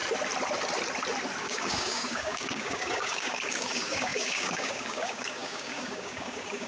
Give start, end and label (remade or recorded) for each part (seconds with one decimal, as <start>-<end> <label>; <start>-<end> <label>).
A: 0.0-1.4 recorded; 1.4-6.7 remade

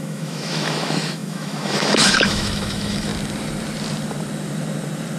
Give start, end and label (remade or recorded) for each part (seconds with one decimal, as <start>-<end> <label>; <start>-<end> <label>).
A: 0.0-3.1 remade; 3.1-5.2 recorded

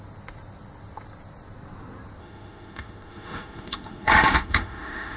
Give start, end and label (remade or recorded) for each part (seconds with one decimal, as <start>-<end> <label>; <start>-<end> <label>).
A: 0.0-2.2 recorded; 2.2-5.2 remade